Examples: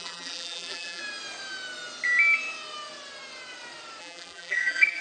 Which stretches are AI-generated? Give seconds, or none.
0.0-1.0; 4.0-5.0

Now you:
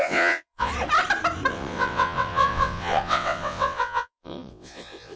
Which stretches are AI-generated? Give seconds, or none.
0.0-0.7; 1.5-5.2